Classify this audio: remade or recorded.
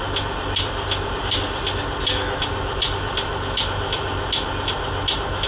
recorded